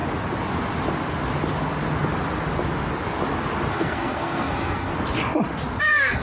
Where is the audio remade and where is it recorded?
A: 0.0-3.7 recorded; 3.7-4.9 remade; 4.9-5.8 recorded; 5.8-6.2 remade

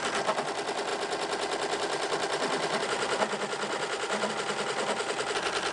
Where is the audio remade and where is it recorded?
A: 0.0-5.7 recorded

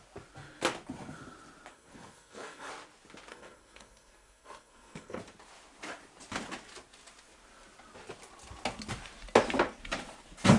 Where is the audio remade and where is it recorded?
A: 0.0-1.7 recorded; 1.7-2.7 remade; 2.7-3.3 recorded; 3.3-5.2 remade; 5.2-10.6 recorded